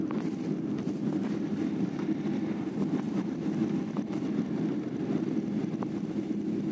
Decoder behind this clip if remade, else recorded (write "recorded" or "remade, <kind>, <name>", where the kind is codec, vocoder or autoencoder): recorded